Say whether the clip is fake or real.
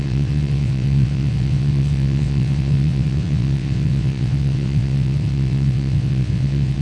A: fake